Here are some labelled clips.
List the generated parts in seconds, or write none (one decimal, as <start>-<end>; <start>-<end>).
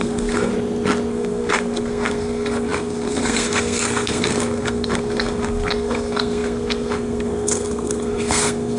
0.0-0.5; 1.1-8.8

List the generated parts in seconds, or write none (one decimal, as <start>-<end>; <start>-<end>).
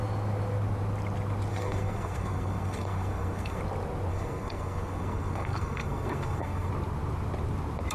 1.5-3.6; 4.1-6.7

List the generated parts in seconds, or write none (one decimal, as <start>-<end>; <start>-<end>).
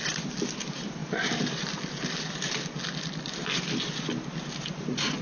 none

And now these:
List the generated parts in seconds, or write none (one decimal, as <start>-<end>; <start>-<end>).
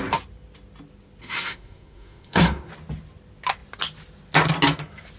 1.2-2.7